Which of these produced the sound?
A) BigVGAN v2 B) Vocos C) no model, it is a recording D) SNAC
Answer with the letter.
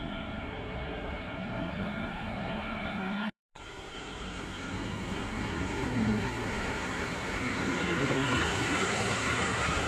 D